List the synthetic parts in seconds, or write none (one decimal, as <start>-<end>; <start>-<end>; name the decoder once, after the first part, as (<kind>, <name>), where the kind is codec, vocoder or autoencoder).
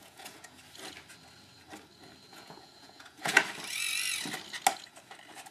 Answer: 0.0-0.6 (vocoder, Vocos); 2.3-3.4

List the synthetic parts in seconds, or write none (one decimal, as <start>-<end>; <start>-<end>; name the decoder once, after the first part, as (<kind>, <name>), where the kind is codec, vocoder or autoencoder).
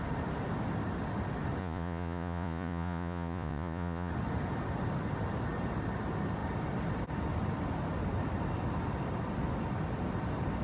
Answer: 1.6-4.1 (vocoder, Vocos)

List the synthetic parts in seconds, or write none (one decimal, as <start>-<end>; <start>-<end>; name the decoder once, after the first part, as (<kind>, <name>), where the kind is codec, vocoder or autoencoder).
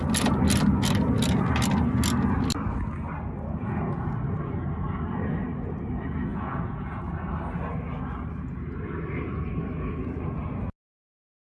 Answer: 6.3-7.0 (vocoder, Vocos)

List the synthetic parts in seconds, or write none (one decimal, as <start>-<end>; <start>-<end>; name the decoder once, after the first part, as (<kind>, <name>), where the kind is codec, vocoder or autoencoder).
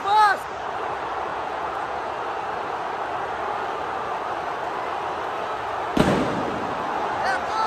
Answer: 1.3-2.1 (vocoder, Vocos)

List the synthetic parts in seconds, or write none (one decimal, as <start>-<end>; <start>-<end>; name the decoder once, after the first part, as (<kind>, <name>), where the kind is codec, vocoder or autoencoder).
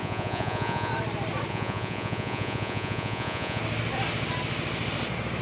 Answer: 0.0-0.9 (vocoder, Vocos); 1.5-3.6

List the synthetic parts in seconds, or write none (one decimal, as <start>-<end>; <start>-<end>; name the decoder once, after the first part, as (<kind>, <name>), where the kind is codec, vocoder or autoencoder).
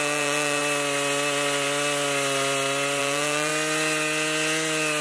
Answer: 0.0-0.6 (vocoder, Vocos); 3.0-3.5